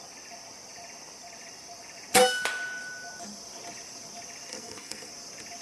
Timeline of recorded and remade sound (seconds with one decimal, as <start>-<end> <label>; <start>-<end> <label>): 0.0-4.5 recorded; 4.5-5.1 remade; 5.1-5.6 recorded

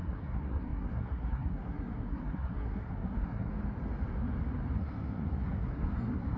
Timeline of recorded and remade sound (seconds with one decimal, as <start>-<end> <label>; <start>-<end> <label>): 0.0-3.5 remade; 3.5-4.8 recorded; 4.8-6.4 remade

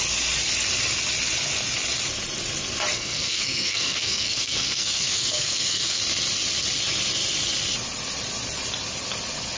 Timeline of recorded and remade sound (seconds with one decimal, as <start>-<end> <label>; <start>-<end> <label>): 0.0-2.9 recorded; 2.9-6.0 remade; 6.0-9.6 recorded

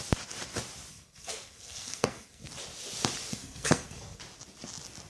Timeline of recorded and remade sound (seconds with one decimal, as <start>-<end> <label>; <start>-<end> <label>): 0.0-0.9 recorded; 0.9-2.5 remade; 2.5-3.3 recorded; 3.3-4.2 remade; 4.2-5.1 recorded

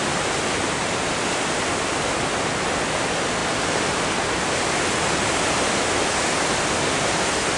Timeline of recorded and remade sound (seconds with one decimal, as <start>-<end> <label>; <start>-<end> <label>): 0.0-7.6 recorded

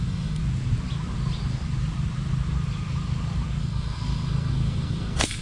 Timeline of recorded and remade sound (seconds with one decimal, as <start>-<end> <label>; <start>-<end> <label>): 0.0-0.4 remade; 0.4-3.6 recorded; 3.6-5.4 remade